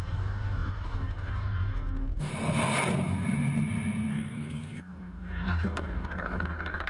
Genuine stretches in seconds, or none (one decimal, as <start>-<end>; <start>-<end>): 2.3-4.1